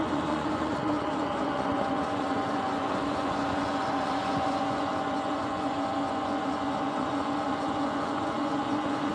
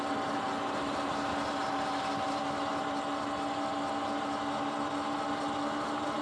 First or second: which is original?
second